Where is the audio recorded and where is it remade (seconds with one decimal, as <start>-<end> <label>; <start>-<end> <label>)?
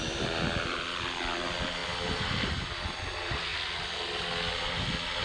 0.0-5.2 recorded